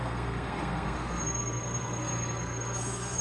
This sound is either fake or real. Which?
fake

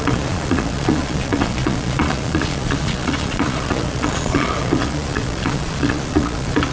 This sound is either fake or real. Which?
fake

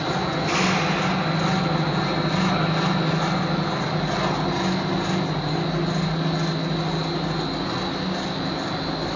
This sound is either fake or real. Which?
real